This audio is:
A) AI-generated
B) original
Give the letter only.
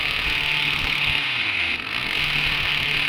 A